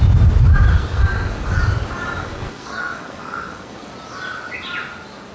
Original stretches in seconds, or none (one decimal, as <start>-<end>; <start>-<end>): 0.0-0.7; 1.6-2.2; 3.9-5.3